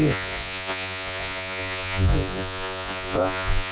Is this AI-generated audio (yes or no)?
yes